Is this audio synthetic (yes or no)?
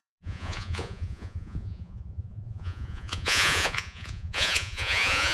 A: yes